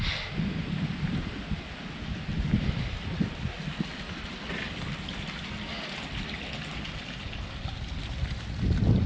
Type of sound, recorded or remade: recorded